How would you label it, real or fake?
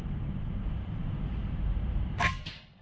fake